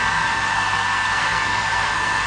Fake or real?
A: fake